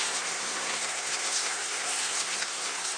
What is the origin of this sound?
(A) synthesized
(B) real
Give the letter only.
A